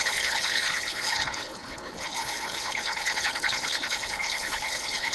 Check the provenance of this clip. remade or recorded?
remade